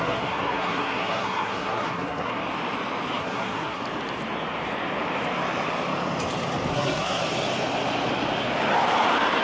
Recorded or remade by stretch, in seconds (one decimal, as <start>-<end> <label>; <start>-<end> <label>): 0.0-2.4 remade; 2.4-3.2 recorded; 3.2-3.8 remade; 3.8-6.7 recorded; 6.7-7.2 remade; 7.2-9.4 recorded